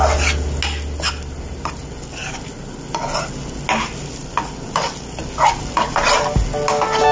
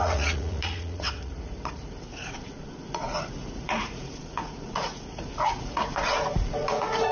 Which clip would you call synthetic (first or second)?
second